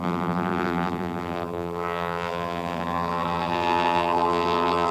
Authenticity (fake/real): fake